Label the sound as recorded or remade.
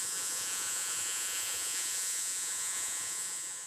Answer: remade